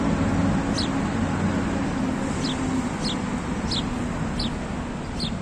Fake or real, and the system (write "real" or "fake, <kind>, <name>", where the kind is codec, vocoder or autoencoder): real